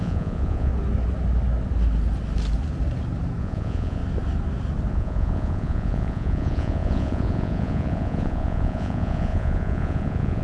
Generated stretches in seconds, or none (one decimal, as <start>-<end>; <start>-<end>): 0.0-0.7; 3.4-4.0; 4.9-10.4